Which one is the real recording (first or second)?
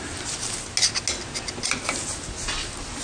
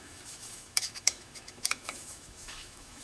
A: first